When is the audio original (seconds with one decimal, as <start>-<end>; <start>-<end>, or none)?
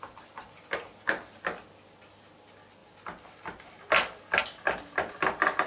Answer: 0.0-5.7